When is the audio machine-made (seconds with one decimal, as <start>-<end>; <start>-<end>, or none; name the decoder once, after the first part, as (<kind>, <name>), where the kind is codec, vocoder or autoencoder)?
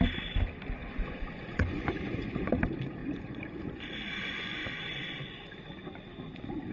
0.8-2.5 (vocoder, Vocos); 3.0-5.6